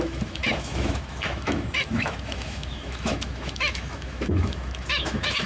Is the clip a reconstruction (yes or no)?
yes